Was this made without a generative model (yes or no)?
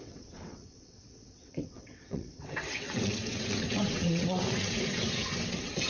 no